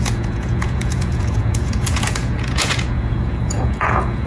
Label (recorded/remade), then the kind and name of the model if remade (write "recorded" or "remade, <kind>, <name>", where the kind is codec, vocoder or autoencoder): remade, vocoder, Vocos